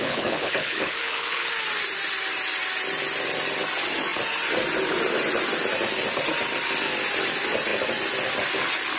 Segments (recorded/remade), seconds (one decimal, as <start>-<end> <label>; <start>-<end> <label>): 0.0-1.5 remade; 1.5-9.0 recorded